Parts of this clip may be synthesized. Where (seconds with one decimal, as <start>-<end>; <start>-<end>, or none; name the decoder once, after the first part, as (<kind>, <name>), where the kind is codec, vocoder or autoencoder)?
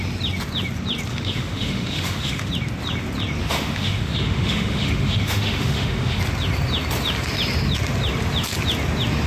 1.1-2.5 (autoencoder, DAC-VAE); 3.4-6.2